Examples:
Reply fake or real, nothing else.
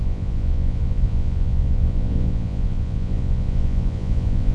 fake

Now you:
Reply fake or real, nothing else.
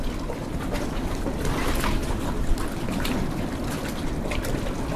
real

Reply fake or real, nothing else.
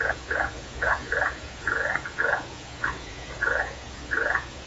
fake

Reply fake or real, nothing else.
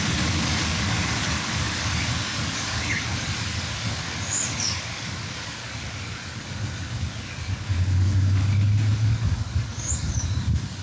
fake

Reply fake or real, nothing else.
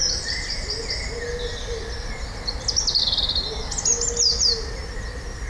real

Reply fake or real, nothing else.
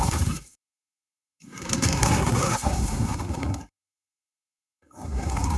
fake